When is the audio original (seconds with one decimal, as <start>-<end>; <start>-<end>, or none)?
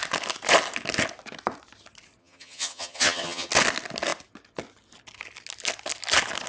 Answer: 0.0-2.2; 3.5-6.5